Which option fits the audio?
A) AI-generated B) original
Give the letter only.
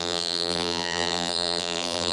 A